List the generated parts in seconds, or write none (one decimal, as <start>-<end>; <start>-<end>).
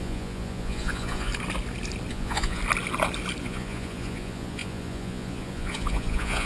0.0-1.3; 2.1-2.6; 3.4-6.5